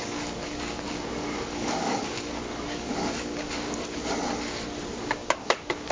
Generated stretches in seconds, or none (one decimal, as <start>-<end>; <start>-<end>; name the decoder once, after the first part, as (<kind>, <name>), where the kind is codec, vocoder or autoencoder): 0.0-4.0 (codec, DAC); 5.0-5.9